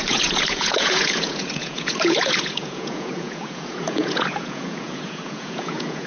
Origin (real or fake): fake